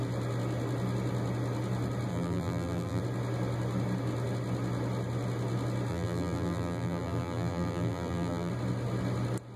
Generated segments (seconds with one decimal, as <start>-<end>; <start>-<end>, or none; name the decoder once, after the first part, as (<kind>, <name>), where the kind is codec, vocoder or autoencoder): 2.1-3.0 (vocoder, BigVGAN v2); 5.9-8.5